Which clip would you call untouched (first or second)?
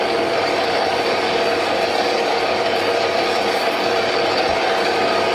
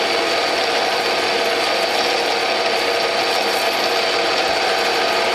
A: second